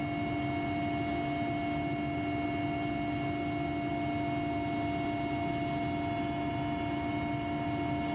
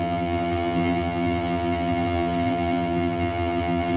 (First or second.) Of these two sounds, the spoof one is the second